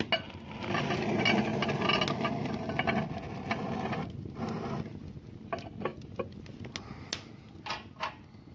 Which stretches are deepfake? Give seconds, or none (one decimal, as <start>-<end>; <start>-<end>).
5.9-6.5